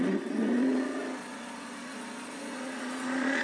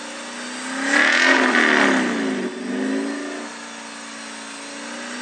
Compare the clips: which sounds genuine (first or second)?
second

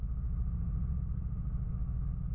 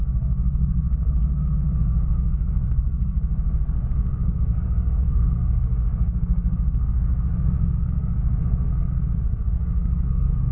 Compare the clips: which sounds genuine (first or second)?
first